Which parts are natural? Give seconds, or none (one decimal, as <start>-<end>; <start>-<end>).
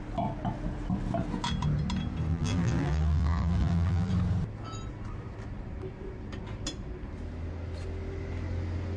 0.0-2.3; 4.1-9.0